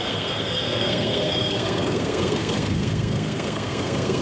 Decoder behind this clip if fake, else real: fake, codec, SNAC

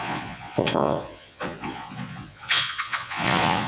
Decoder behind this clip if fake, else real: fake, vocoder, Vocos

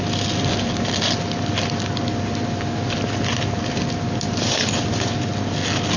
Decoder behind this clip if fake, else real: real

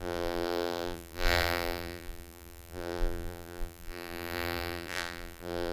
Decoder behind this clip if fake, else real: fake, vocoder, BigVGAN v2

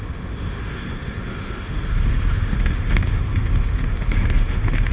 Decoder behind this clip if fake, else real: fake, autoencoder, DAC-VAE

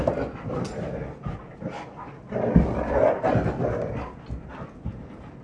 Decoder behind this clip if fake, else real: real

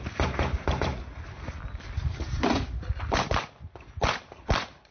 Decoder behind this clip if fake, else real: real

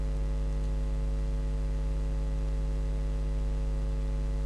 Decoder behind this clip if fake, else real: real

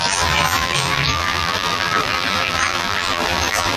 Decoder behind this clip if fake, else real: fake, vocoder, BigVGAN v2